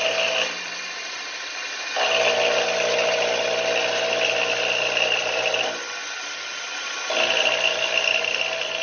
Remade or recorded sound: recorded